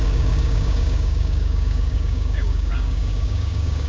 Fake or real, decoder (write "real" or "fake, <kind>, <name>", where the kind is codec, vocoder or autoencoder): fake, codec, DAC